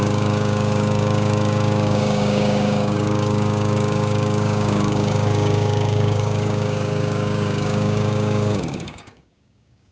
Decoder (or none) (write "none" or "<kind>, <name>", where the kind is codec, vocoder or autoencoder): codec, DAC